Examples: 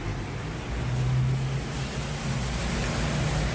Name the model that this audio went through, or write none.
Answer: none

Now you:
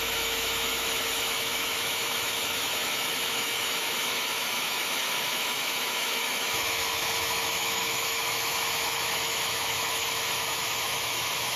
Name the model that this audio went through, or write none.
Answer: autoencoder, DAC-VAE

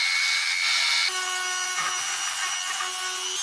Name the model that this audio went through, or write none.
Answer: none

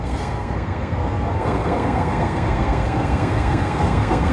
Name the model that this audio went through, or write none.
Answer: codec, SNAC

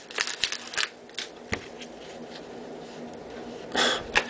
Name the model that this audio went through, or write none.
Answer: none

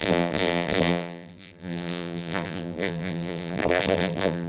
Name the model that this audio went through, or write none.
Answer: vocoder, BigVGAN v2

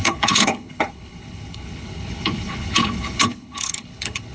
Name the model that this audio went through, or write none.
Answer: codec, HILCodec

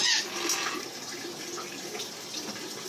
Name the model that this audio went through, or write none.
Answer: none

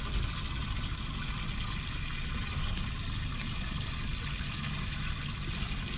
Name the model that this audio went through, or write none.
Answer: none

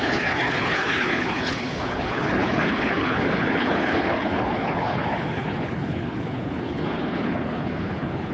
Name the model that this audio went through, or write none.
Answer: codec, HILCodec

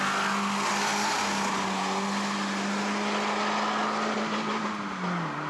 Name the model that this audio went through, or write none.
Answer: none